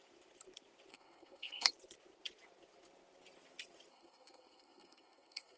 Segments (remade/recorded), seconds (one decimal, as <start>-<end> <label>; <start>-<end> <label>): 0.0-0.9 recorded; 0.9-1.7 remade; 1.7-3.9 recorded; 3.9-5.6 remade

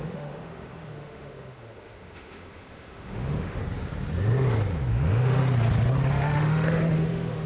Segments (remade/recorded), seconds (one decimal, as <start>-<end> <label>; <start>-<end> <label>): 0.0-3.6 remade; 3.6-4.9 recorded; 4.9-5.4 remade; 5.4-6.1 recorded; 6.1-7.5 remade

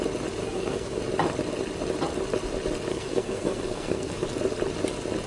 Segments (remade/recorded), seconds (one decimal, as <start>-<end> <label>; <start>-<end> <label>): 0.0-0.4 recorded; 0.4-1.0 remade; 1.0-2.9 recorded; 2.9-4.3 remade; 4.3-5.3 recorded